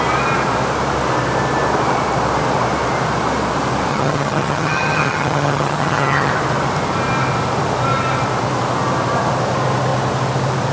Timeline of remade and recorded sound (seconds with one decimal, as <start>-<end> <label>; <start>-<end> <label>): 0.0-3.9 recorded; 3.9-6.3 remade; 6.3-10.7 recorded

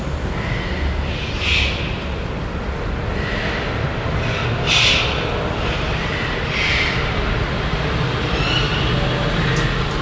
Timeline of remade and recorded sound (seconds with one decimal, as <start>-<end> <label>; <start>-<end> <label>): 0.0-3.9 recorded; 3.9-8.9 remade; 8.9-10.0 recorded